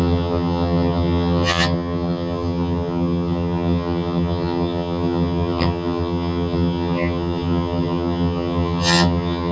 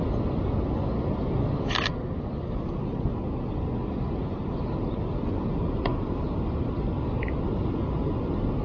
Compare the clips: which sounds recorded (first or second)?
second